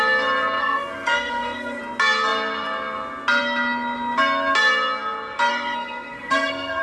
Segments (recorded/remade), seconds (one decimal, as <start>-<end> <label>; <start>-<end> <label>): 0.0-0.6 recorded; 0.6-1.8 remade; 1.8-5.5 recorded; 5.5-6.8 remade